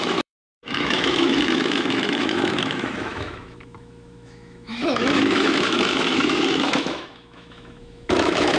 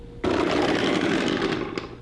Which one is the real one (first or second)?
second